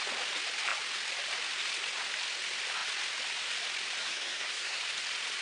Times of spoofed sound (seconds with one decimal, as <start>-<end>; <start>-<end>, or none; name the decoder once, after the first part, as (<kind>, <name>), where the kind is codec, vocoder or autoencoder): 4.0-4.8 (codec, SNAC)